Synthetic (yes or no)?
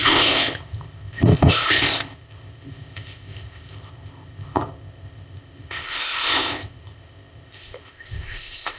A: yes